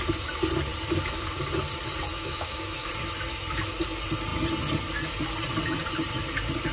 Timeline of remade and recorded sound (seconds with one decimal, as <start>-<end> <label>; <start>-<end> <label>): 0.0-2.1 recorded; 2.1-2.9 remade; 2.9-6.7 recorded